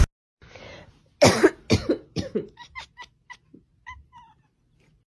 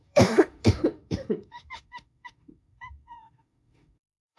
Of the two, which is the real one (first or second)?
first